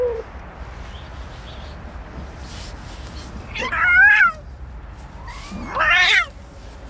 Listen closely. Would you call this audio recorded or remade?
recorded